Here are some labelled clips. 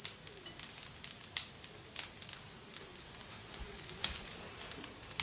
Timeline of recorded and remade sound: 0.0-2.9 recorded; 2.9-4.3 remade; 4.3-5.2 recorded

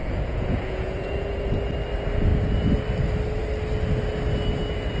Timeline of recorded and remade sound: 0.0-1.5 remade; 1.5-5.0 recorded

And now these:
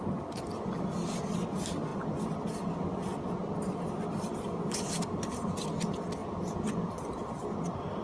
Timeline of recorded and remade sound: 0.0-6.2 recorded; 6.2-6.9 remade; 6.9-8.0 recorded